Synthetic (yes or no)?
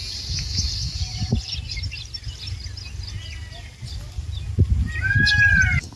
no